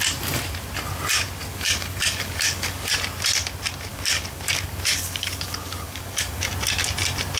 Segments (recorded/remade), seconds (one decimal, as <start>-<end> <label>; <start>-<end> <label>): 0.0-1.5 recorded; 1.5-2.9 remade; 2.9-3.9 recorded; 3.9-6.5 remade; 6.5-7.4 recorded